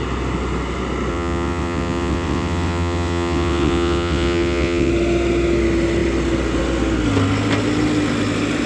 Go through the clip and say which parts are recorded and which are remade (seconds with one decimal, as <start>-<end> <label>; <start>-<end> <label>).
0.0-1.1 recorded; 1.1-4.9 remade; 4.9-8.7 recorded